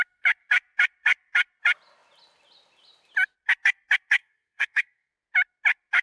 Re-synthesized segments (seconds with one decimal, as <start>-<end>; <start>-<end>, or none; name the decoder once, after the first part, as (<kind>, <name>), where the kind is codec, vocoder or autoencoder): 4.2-5.1 (codec, SNAC)